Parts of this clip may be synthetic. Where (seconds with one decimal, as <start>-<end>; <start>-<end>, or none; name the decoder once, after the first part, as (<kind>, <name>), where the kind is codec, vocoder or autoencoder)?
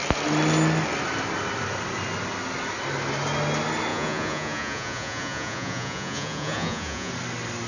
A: 3.9-7.1 (vocoder, Vocos)